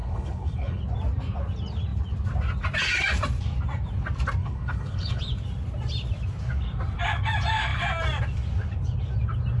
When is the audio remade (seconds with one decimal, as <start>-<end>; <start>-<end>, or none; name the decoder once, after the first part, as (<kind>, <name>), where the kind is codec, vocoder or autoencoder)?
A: 0.0-0.8 (codec, HILCodec); 4.4-5.2